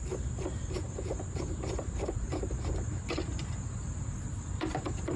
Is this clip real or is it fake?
fake